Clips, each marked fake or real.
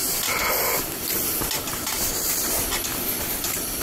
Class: fake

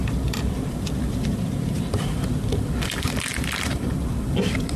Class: fake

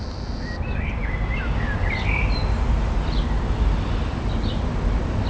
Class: real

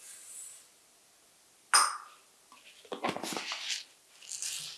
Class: real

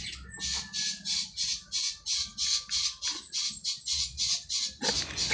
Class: real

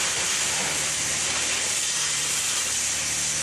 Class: real